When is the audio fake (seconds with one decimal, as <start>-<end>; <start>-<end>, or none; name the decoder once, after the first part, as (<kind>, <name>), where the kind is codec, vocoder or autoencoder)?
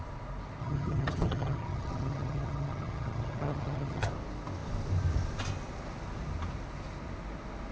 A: 0.6-4.1 (vocoder, HiFi-GAN)